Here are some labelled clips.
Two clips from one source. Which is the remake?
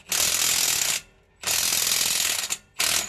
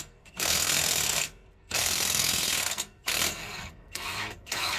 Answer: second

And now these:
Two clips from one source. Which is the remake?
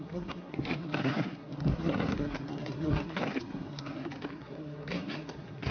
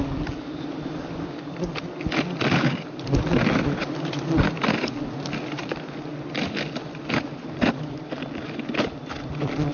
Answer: first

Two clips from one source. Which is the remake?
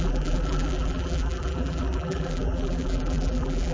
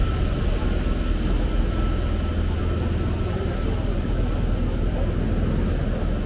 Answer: first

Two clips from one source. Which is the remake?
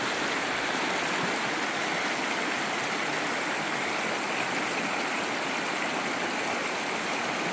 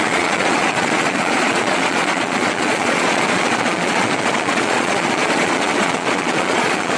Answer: second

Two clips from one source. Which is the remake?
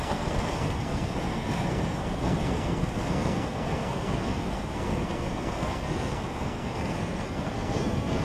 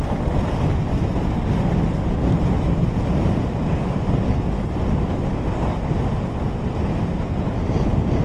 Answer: first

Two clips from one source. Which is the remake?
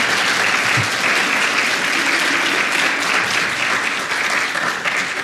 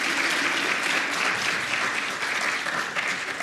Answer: second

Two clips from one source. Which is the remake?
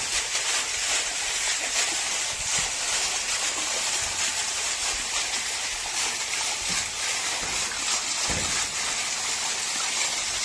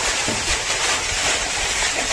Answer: second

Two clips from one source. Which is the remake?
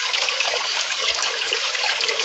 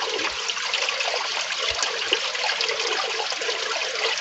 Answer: first